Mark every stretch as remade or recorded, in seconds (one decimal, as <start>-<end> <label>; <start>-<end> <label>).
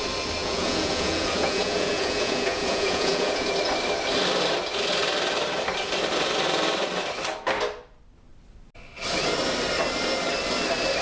0.0-0.4 recorded; 0.4-3.5 remade; 3.5-11.0 recorded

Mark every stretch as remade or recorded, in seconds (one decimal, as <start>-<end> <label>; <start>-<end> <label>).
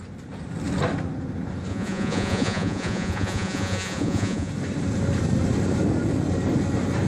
0.0-1.7 recorded; 1.7-4.5 remade; 4.5-7.1 recorded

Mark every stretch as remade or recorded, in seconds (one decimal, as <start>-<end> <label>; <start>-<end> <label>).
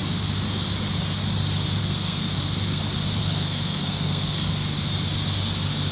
0.0-1.8 recorded; 1.8-2.8 remade; 2.8-3.2 recorded; 3.2-4.5 remade; 4.5-5.9 recorded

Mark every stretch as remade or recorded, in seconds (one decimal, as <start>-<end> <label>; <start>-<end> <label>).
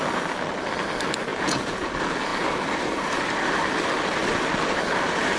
0.0-1.3 recorded; 1.3-1.9 remade; 1.9-5.4 recorded